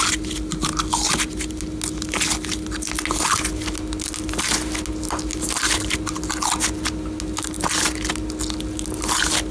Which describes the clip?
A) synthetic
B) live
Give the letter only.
B